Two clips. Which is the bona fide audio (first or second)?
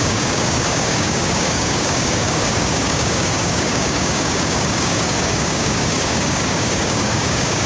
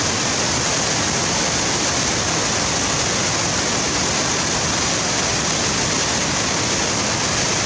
second